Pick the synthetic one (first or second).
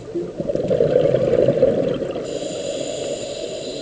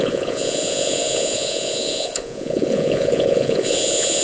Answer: second